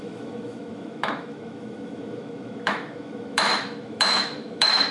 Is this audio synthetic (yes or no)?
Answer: yes